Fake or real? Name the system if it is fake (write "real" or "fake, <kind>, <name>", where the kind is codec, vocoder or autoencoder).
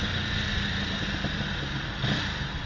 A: real